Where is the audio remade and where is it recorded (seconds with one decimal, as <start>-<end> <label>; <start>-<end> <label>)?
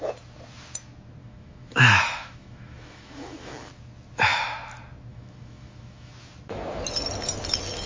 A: 0.0-1.2 recorded; 1.2-3.7 remade; 3.7-5.1 recorded; 5.1-6.1 remade; 6.1-7.9 recorded